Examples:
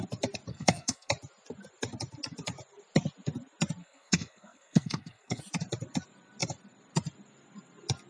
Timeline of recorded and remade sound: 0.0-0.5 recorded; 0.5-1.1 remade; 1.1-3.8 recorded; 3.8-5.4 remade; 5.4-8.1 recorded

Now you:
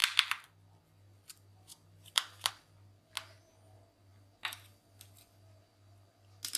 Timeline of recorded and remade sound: 0.0-0.8 remade; 0.8-1.7 recorded; 1.7-2.5 remade; 2.5-6.6 recorded